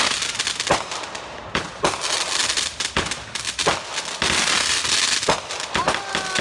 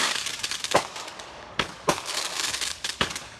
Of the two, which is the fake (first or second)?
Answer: second